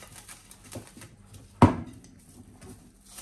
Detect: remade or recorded remade